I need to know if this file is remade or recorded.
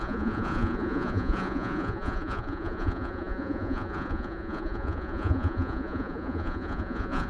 remade